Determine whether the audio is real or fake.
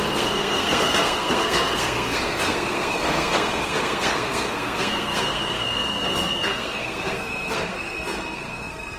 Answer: fake